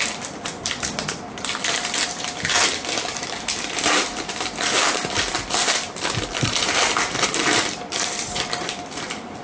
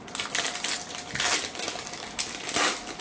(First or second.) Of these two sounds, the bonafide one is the second